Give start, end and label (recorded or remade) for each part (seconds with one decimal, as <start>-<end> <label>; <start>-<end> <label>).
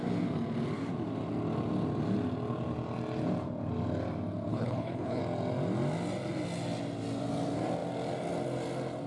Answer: 0.0-4.5 recorded; 4.5-5.2 remade; 5.2-9.1 recorded